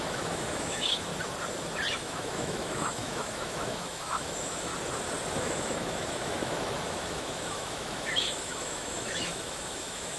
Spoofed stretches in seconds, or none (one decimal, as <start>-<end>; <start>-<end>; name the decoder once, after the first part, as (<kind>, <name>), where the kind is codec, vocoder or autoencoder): 0.0-1.1 (autoencoder, DAC-VAE); 1.9-4.7; 5.4-10.2